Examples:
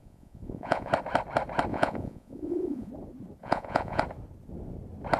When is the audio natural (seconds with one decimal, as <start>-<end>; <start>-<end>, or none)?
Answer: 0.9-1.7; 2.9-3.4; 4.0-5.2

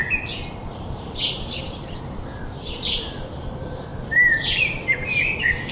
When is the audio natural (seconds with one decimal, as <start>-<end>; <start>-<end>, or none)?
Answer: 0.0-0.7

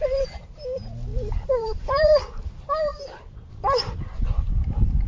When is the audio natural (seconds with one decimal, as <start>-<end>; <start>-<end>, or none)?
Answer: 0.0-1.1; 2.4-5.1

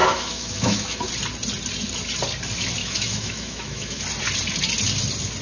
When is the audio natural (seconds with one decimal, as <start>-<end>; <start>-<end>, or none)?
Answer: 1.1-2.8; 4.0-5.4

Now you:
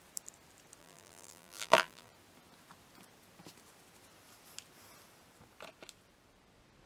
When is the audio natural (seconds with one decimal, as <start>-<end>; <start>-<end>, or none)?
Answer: 0.0-0.8; 2.1-6.9

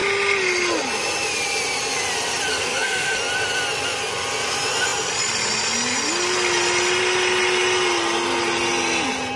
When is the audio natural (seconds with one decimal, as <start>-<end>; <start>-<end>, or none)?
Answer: 0.0-2.5; 3.2-9.4

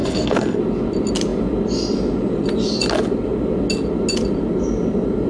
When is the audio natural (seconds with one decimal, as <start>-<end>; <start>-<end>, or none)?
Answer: 0.6-5.3